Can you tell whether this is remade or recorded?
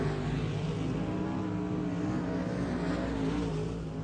recorded